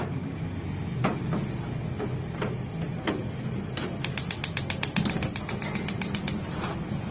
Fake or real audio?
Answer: real